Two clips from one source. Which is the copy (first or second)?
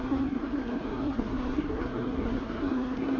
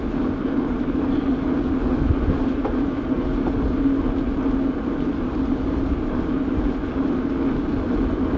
first